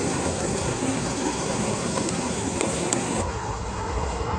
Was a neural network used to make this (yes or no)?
yes